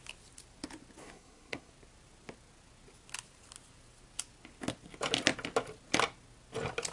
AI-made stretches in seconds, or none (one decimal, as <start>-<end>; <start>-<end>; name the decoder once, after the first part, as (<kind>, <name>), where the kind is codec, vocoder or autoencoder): 1.0-1.7 (codec, SNAC)